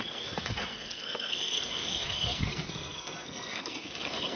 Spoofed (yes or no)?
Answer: yes